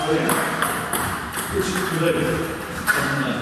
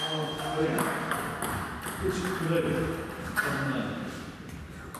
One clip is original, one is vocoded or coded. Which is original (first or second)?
second